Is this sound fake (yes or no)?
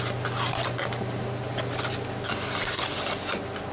no